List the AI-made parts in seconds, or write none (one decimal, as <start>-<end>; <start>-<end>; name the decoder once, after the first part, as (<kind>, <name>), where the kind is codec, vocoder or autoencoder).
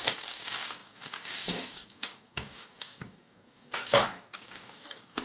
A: 0.0-5.2 (codec, DAC)